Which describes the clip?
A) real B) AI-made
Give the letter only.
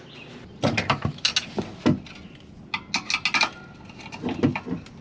A